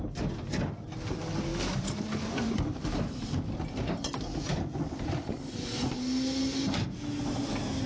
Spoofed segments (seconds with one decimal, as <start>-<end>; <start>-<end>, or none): 1.5-5.8